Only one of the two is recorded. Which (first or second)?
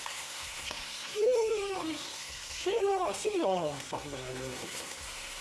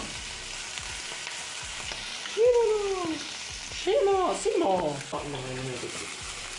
second